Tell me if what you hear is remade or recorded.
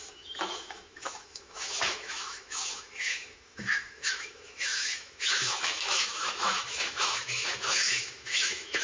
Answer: remade